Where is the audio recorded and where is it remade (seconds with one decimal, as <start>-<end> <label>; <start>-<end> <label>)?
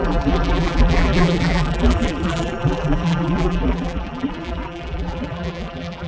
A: 0.0-6.1 remade